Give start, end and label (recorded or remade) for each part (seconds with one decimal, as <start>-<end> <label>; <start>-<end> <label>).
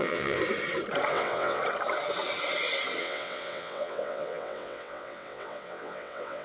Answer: 0.0-0.4 remade; 0.4-1.1 recorded; 1.1-1.6 remade; 1.6-3.0 recorded; 3.0-6.4 remade